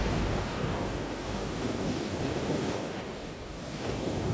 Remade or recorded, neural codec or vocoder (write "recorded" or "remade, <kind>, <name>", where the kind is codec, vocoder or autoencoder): remade, codec, DAC